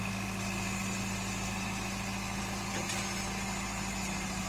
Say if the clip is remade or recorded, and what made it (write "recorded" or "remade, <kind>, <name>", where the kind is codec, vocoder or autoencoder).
recorded